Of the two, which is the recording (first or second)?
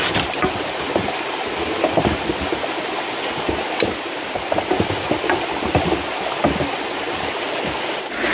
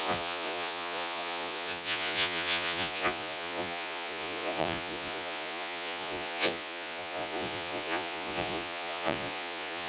first